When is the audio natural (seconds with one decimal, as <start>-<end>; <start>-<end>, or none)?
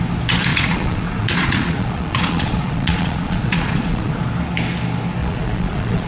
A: 0.0-0.5; 4.2-5.2